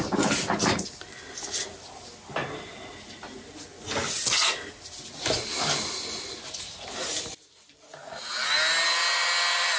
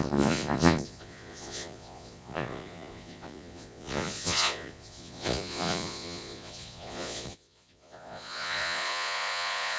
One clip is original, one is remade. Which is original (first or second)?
first